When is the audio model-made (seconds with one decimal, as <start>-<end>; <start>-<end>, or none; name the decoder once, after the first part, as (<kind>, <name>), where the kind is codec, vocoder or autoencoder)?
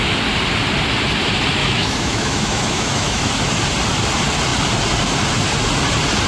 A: 1.6-3.3 (autoencoder, DAC-VAE)